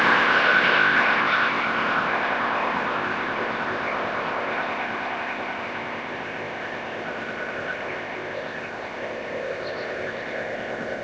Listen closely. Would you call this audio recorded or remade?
remade